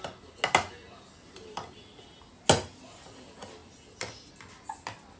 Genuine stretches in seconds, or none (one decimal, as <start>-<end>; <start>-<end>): 0.0-5.2